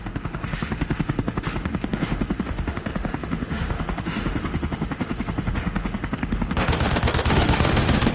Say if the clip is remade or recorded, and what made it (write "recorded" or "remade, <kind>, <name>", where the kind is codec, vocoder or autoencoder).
remade, autoencoder, DAC-VAE